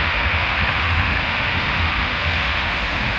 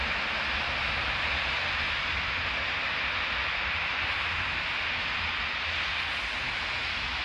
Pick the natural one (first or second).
second